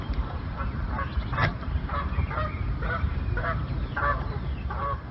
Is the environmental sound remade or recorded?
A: remade